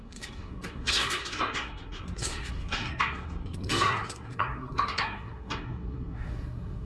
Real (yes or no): no